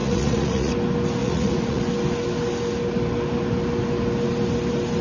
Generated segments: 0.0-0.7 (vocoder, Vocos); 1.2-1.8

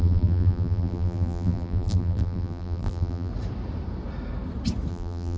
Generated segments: 0.0-3.3 (vocoder, BigVGAN v2); 4.9-5.4

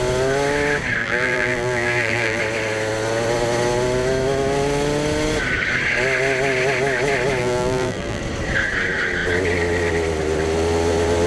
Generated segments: 1.0-2.4 (vocoder, BigVGAN v2); 7.4-8.2

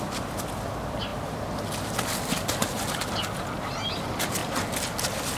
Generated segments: none

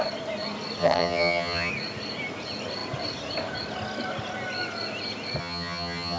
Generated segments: 0.8-1.7 (vocoder, HiFi-GAN); 5.4-6.2